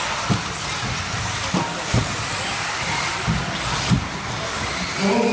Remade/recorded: recorded